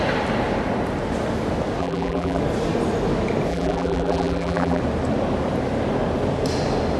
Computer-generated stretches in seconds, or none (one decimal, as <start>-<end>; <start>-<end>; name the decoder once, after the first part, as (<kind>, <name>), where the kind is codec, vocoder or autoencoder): 1.8-2.4 (vocoder, BigVGAN v2); 3.5-4.8